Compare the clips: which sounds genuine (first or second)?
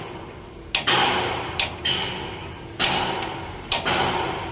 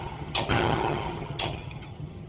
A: first